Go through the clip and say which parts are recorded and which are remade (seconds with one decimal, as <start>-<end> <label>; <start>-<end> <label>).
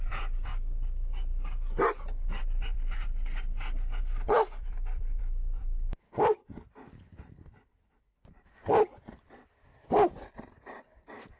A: 0.0-0.5 remade; 0.5-2.4 recorded; 2.4-3.1 remade; 3.1-4.0 recorded; 4.0-11.4 remade